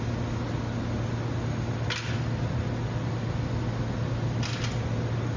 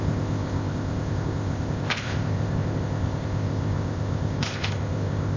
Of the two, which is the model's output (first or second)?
second